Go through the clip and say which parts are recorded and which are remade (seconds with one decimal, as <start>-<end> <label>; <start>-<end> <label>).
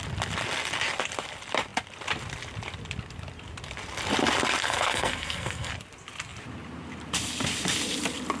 0.0-4.6 recorded; 4.6-5.7 remade; 5.7-8.4 recorded